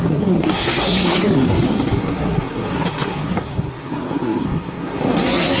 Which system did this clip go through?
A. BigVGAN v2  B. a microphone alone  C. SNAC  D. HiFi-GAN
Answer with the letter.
C